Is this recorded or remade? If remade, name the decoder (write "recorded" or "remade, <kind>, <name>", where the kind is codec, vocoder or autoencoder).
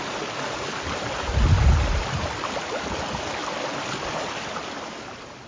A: recorded